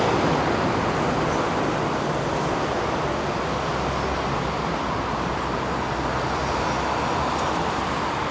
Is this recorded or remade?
recorded